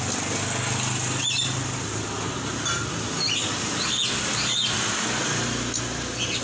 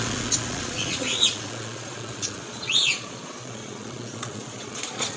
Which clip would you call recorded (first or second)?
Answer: first